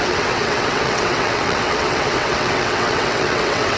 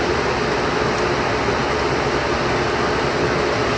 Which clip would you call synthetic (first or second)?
first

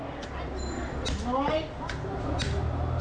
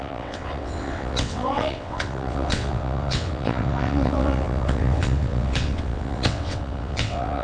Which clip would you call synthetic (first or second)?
second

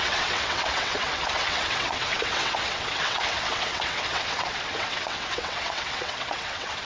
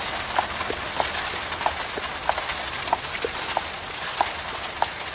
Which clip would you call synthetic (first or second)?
first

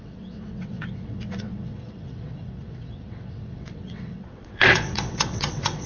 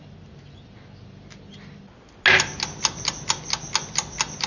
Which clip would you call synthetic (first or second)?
first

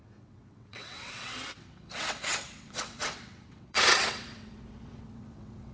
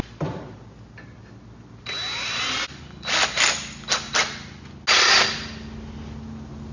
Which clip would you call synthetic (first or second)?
first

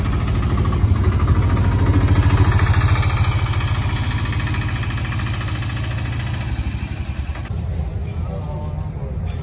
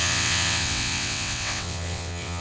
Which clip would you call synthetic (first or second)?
second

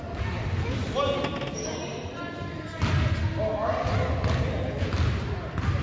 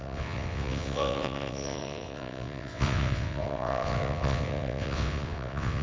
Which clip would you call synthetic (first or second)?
second